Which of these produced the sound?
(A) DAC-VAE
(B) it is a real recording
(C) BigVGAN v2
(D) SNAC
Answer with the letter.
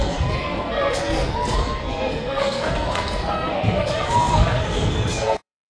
D